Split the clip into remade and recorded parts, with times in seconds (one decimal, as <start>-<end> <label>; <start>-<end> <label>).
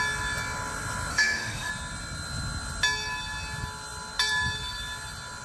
0.0-1.1 recorded; 1.1-1.7 remade; 1.7-5.4 recorded